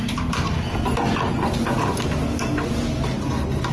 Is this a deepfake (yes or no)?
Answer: no